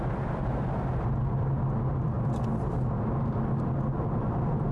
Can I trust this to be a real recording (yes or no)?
yes